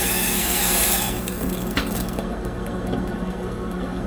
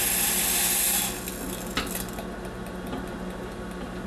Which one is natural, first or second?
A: second